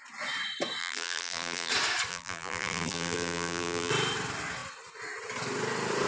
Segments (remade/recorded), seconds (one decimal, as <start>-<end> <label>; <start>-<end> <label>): 0.0-0.8 recorded; 0.8-1.7 remade; 1.7-2.1 recorded; 2.1-3.9 remade; 3.9-6.1 recorded